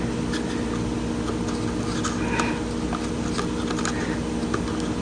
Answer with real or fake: real